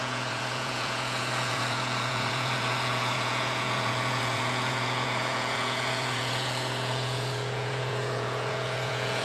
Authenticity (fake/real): fake